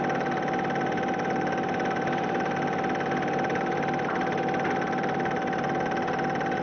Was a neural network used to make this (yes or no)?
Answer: no